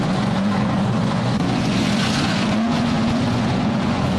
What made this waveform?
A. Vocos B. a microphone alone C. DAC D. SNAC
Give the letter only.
A